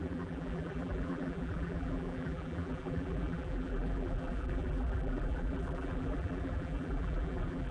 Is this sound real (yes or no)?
no